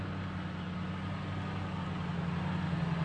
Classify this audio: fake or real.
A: real